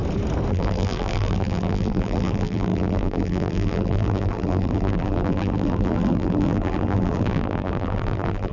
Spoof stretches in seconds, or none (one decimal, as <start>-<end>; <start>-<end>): 0.5-8.5